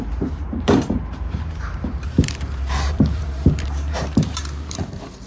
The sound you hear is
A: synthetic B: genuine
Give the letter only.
A